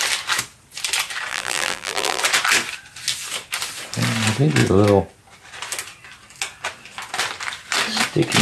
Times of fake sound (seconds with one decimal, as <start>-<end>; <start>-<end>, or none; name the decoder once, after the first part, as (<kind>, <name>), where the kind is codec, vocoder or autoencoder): 1.3-2.2 (vocoder, BigVGAN v2)